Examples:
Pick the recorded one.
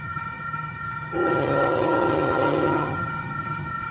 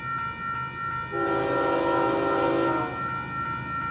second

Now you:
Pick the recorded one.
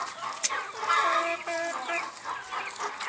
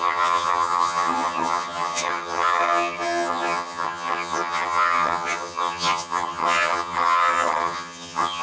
first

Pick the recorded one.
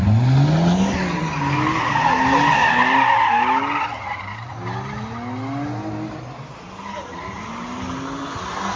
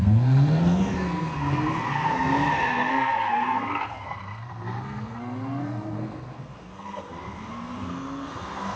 first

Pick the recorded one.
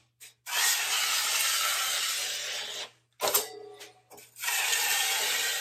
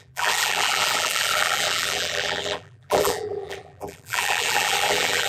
first